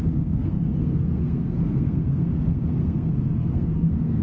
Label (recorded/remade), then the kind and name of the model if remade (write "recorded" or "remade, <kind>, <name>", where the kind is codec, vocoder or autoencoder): remade, codec, SNAC